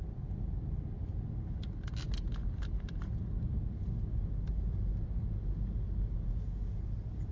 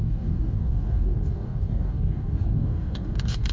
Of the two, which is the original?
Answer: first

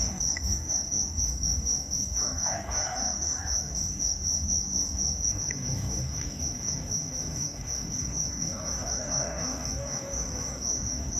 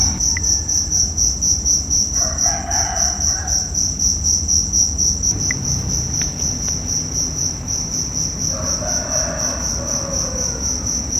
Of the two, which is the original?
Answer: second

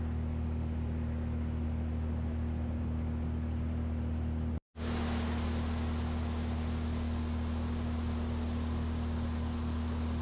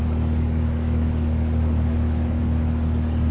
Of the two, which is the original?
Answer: first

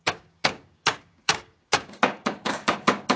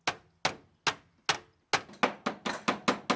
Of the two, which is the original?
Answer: second